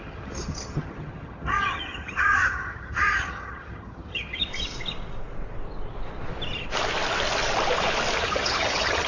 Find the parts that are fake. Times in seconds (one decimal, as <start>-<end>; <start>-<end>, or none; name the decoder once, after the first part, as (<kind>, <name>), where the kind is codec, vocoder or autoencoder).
0.0-4.5 (vocoder, HiFi-GAN); 8.2-9.1